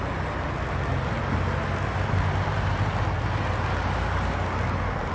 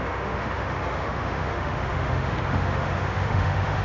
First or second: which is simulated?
second